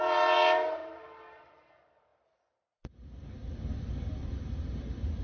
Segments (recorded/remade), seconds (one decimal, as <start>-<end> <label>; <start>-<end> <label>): 0.0-5.2 remade